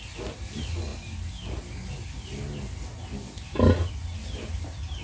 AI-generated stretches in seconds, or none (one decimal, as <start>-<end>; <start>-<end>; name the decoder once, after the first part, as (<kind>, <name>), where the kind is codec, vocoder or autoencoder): none